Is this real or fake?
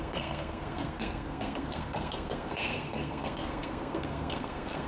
fake